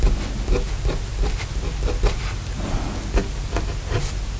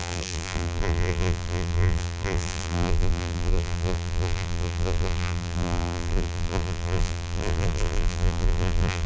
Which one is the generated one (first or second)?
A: second